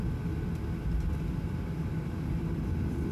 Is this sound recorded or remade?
recorded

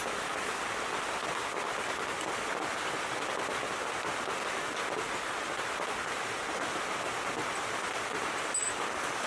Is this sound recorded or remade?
recorded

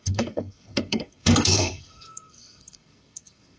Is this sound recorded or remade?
remade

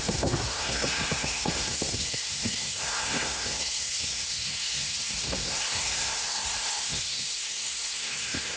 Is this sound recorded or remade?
remade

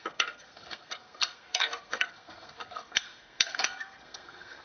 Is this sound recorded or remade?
remade